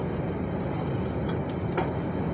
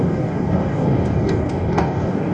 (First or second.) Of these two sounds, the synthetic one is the second